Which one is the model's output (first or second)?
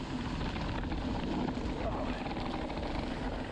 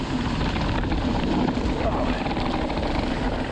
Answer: second